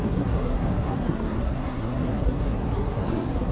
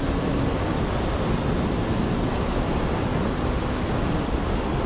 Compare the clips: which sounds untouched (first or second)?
second